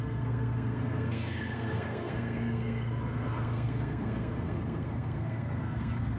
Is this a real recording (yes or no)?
no